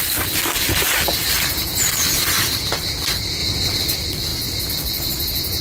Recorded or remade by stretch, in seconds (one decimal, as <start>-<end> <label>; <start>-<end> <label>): 0.0-3.4 remade; 3.4-3.9 recorded; 3.9-4.3 remade; 4.3-5.6 recorded

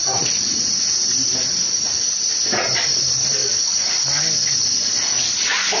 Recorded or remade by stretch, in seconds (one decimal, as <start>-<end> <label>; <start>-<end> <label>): 0.0-0.9 remade; 0.9-5.8 recorded

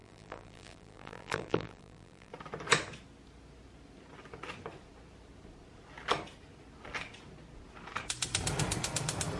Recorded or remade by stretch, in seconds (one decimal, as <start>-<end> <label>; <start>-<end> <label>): 0.0-2.3 remade; 2.3-9.4 recorded

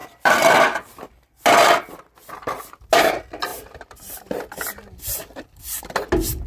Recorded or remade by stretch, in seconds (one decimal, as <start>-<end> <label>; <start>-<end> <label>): 0.0-1.3 remade; 1.3-3.5 recorded; 3.5-5.8 remade; 5.8-6.5 recorded

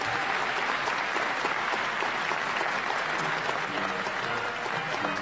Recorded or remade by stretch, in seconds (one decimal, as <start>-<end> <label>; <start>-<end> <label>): 0.0-5.2 recorded

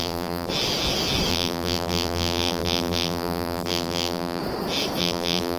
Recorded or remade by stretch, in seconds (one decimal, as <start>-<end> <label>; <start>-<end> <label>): 0.0-0.5 remade; 0.5-1.3 recorded; 1.3-4.4 remade; 4.4-5.0 recorded; 5.0-5.6 remade

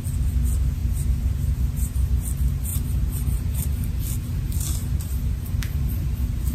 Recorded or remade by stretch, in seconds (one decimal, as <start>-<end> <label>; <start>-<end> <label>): 0.0-0.8 recorded; 0.8-2.1 remade; 2.1-2.7 recorded; 2.7-4.0 remade; 4.0-6.5 recorded

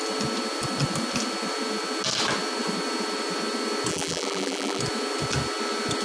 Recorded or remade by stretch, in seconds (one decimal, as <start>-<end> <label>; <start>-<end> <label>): 0.0-3.9 recorded; 3.9-4.8 remade; 4.8-6.0 recorded